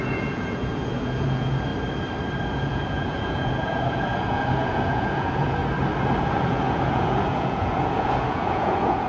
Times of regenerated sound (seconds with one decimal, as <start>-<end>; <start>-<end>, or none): 0.0-1.7; 2.5-5.6; 6.2-9.1